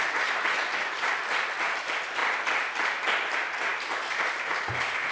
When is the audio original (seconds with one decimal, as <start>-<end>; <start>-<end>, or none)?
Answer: 0.0-5.1